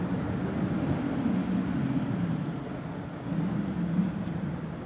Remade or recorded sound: recorded